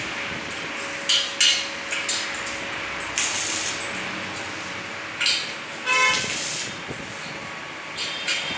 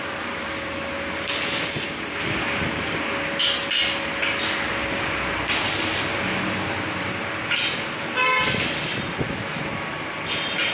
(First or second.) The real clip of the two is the first